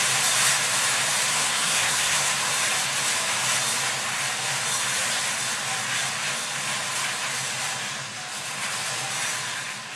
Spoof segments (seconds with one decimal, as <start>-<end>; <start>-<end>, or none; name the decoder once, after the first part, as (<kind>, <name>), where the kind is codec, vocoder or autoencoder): 1.3-2.3 (codec, SNAC)